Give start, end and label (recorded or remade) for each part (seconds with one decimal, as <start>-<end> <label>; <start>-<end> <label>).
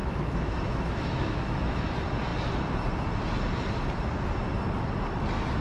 0.0-1.9 remade; 1.9-5.6 recorded